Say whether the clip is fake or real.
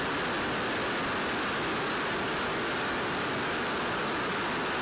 real